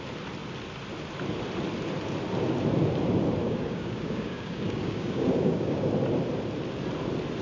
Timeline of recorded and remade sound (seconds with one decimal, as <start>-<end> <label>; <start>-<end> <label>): 0.0-3.4 recorded; 3.4-5.9 remade; 5.9-7.4 recorded